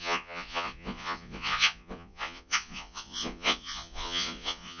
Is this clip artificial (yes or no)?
yes